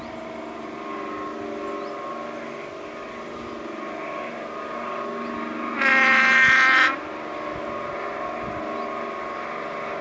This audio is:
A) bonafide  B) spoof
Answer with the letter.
A